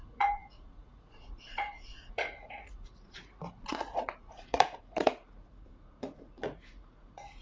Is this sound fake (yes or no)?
yes